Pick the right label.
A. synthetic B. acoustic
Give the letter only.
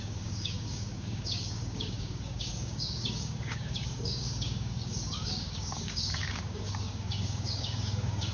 A